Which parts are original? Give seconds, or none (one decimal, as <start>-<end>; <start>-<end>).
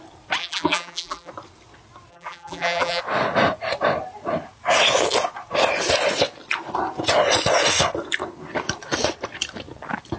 0.0-0.4; 1.3-2.1; 3.0-10.2